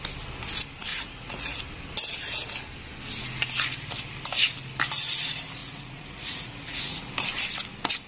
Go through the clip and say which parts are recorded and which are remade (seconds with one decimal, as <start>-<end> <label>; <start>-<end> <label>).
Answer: 0.0-0.9 recorded; 0.9-1.6 remade; 1.6-5.6 recorded; 5.6-7.1 remade; 7.1-8.1 recorded